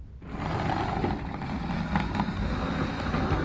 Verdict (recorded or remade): recorded